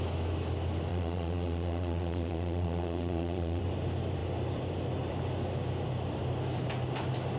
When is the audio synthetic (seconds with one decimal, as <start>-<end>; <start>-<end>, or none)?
0.9-3.6